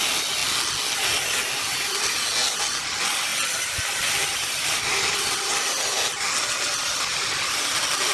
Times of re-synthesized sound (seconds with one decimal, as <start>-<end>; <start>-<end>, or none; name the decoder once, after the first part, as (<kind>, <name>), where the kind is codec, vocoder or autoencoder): 3.3-5.5 (vocoder, BigVGAN v2)